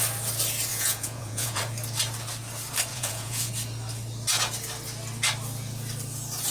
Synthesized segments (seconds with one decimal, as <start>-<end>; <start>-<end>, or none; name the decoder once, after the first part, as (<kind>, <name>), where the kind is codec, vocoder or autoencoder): 0.7-1.6 (vocoder, Vocos); 2.9-3.5